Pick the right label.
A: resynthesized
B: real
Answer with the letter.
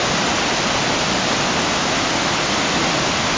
B